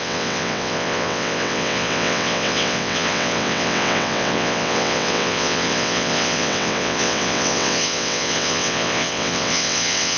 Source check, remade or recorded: remade